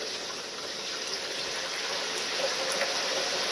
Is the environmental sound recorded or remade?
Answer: remade